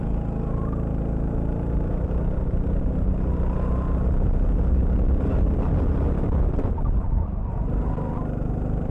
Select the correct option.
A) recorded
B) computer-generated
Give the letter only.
A